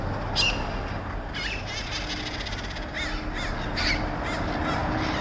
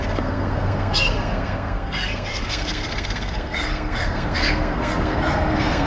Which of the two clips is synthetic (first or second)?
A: second